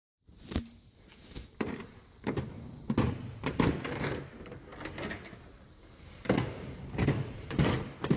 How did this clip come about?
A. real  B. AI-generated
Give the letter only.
B